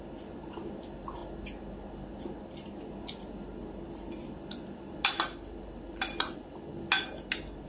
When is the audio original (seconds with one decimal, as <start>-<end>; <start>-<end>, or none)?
0.0-7.7